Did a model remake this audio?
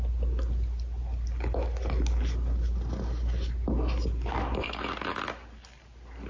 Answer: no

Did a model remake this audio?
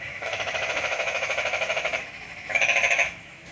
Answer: yes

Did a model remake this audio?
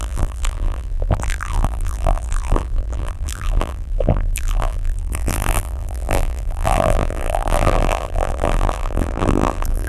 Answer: yes